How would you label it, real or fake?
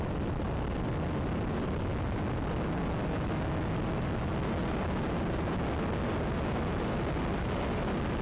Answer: real